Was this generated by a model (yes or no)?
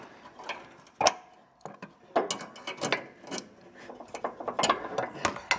no